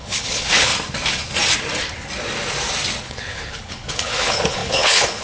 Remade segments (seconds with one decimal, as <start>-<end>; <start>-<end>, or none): 0.0-0.7; 3.0-5.2